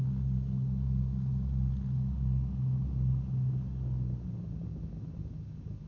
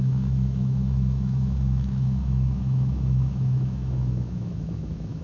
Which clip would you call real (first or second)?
first